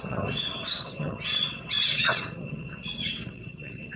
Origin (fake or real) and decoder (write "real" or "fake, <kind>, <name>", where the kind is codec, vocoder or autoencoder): fake, vocoder, WaveNeXt